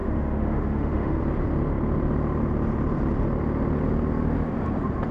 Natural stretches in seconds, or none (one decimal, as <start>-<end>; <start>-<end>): 1.2-5.1